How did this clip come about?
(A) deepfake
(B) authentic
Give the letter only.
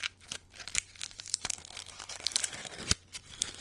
A